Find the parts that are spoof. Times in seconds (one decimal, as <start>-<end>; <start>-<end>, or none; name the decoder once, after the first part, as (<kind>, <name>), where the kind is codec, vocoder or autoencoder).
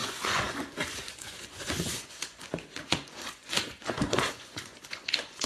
0.0-5.5 (vocoder, Vocos)